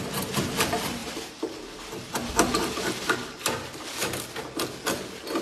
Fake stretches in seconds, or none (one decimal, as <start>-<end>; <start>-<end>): 1.0-4.2